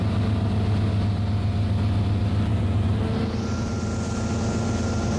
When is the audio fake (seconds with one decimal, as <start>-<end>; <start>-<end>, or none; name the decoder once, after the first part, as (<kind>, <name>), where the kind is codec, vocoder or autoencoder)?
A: 2.5-3.0 (vocoder, BigVGAN v2)